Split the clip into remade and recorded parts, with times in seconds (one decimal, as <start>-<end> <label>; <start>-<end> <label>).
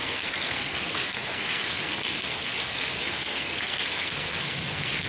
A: 0.0-5.1 remade